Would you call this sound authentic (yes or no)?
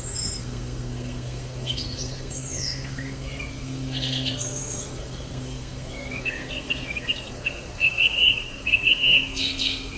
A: no